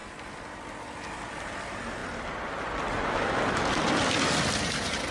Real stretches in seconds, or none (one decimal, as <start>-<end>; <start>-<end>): 0.0-5.1